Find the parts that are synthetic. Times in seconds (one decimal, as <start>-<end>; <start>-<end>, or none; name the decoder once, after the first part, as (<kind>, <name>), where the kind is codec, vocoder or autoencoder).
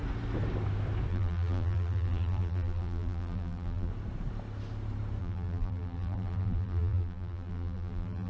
1.1-3.9 (vocoder, BigVGAN v2); 5.2-8.3